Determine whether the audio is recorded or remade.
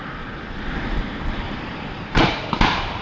remade